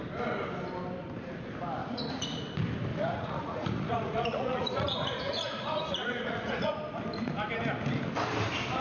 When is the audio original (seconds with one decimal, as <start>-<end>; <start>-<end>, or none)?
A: 0.0-1.8; 2.4-2.9; 6.7-8.8